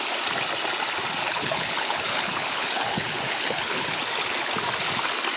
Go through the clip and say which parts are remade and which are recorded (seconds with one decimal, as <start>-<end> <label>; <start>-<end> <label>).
0.0-1.2 recorded; 1.2-4.0 remade; 4.0-5.4 recorded